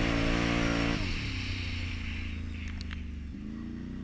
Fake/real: real